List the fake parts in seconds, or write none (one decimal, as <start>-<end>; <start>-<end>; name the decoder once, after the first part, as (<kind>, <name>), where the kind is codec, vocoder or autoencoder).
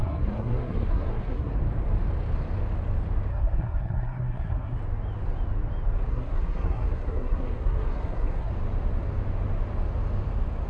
0.0-1.6 (codec, SNAC); 3.3-4.8; 6.1-8.5